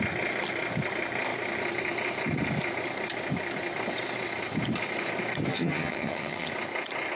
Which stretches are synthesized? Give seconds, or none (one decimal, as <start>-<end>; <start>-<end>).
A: 5.5-6.5